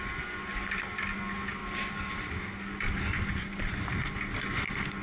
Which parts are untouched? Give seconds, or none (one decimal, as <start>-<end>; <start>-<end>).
0.0-5.0